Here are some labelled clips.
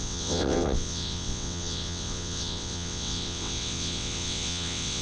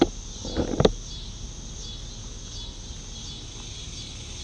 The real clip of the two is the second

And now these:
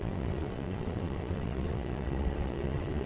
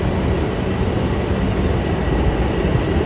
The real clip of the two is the second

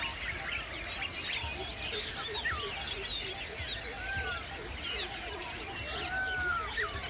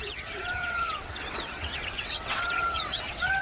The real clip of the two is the first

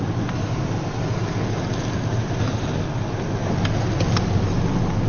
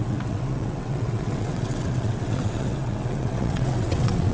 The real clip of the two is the first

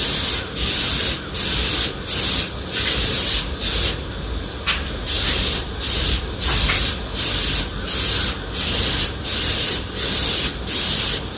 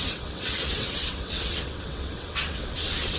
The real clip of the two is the first